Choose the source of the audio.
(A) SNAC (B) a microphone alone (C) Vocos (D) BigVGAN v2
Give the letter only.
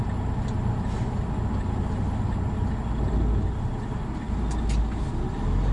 B